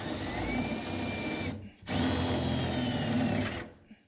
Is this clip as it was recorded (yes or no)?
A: yes